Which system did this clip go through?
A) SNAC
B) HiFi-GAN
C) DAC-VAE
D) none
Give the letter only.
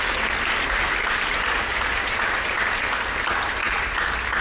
D